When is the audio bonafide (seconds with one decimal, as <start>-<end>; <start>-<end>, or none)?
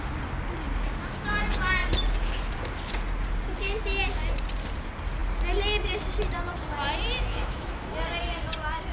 0.0-7.3; 7.9-8.9